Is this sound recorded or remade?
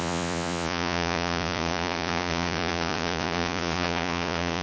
remade